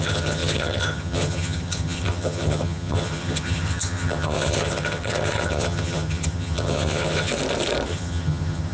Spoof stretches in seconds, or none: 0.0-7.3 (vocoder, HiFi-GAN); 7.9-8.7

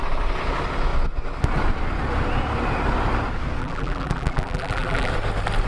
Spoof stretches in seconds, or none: 3.6-5.1 (vocoder, BigVGAN v2)

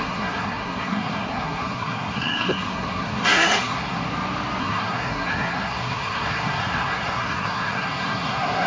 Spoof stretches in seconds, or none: 0.0-4.0 (codec, SNAC); 4.6-8.7

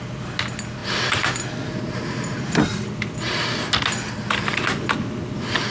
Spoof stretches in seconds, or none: none